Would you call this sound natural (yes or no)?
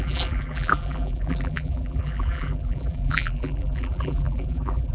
no